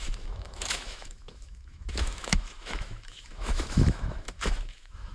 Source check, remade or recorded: remade